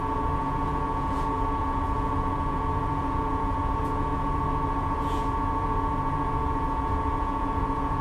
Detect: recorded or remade remade